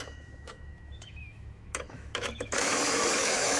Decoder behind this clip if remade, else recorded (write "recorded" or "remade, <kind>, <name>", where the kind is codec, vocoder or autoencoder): remade, autoencoder, DAC-VAE